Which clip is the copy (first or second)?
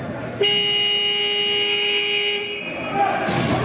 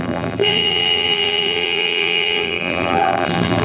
second